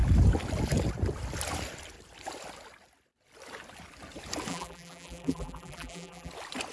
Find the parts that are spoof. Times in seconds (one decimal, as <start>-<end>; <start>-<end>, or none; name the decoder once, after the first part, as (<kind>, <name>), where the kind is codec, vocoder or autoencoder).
4.5-6.3 (vocoder, BigVGAN v2)